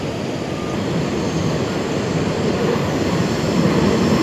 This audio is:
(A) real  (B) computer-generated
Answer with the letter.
A